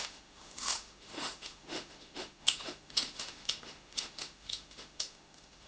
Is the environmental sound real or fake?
fake